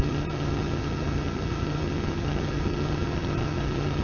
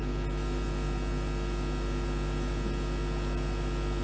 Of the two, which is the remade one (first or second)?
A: first